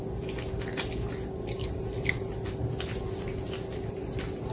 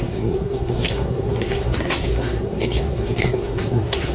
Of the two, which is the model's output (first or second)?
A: second